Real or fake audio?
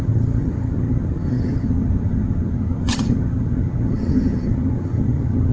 fake